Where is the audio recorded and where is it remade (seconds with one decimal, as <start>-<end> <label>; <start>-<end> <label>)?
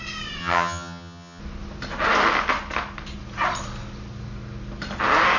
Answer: 0.0-0.4 recorded; 0.4-1.4 remade; 1.4-5.4 recorded